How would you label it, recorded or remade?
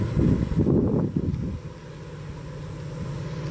recorded